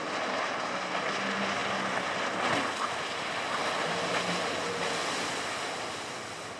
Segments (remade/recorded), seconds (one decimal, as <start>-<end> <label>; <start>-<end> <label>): 0.0-6.6 recorded